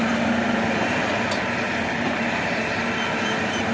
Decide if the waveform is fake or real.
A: fake